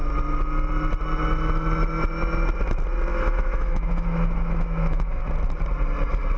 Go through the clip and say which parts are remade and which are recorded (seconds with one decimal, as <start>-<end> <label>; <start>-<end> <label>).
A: 0.0-3.1 recorded; 3.1-5.2 remade; 5.2-6.4 recorded